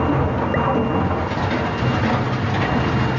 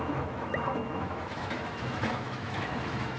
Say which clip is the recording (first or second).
first